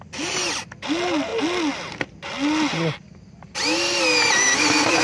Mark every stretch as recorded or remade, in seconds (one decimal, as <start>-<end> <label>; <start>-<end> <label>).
0.0-5.0 recorded